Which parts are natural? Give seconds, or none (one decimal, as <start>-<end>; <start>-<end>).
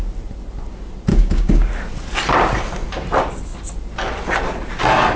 0.0-1.1; 1.7-5.2